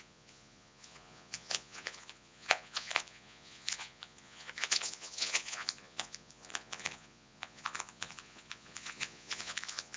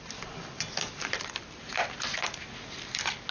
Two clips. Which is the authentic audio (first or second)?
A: second